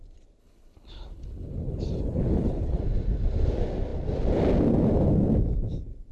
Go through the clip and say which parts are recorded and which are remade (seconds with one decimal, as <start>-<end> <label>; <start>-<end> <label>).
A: 0.0-0.4 recorded; 0.4-2.8 remade; 2.8-6.1 recorded